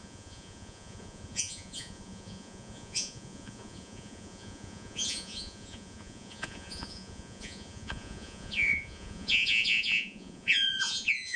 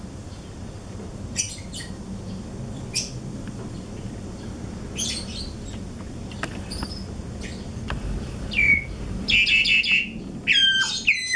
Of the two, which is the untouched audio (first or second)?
second